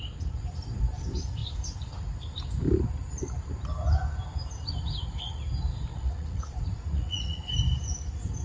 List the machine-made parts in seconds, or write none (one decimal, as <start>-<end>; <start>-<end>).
5.9-7.4